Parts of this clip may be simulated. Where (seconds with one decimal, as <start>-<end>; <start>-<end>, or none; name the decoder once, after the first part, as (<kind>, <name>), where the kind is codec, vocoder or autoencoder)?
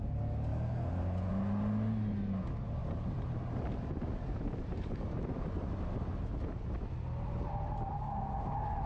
2.8-5.6 (vocoder, BigVGAN v2)